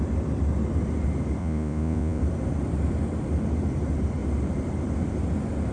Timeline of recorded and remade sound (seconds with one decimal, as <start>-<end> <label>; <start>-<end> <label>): 0.0-1.4 recorded; 1.4-2.2 remade; 2.2-5.7 recorded